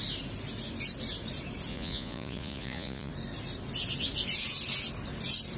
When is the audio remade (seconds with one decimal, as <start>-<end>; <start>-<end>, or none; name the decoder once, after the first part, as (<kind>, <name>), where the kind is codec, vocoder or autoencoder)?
1.7-3.1 (vocoder, Vocos)